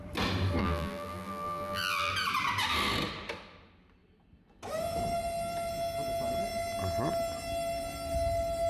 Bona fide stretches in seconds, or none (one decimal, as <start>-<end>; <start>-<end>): 0.0-0.6; 2.1-8.7